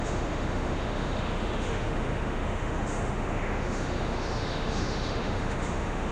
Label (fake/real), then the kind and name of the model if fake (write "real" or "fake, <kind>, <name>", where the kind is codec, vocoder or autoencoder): fake, autoencoder, DAC-VAE